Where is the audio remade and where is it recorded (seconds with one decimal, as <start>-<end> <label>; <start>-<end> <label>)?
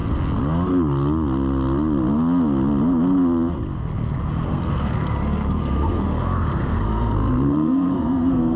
0.0-4.5 recorded; 4.5-8.6 remade